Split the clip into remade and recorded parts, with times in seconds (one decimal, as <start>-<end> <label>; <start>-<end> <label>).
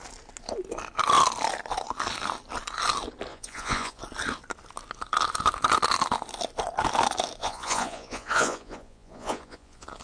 0.0-3.3 recorded; 3.3-4.0 remade; 4.0-7.4 recorded; 7.4-10.0 remade